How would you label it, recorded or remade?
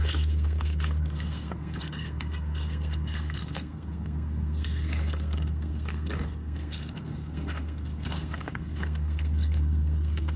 remade